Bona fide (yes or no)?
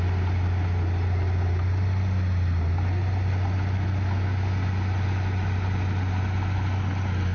yes